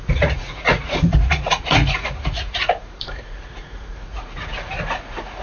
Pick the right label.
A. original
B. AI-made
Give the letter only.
B